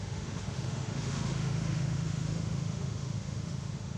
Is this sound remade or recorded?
remade